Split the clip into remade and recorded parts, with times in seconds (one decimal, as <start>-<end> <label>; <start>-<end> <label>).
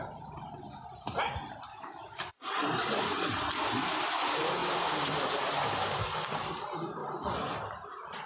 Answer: 0.0-1.7 recorded; 1.7-2.3 remade; 2.3-8.3 recorded